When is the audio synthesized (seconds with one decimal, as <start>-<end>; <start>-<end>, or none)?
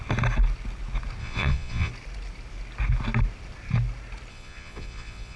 1.2-1.9; 4.3-5.4